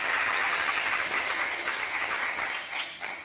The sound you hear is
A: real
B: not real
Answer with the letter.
B